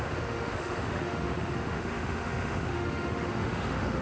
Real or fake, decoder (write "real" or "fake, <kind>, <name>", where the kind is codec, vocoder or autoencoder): fake, autoencoder, DAC-VAE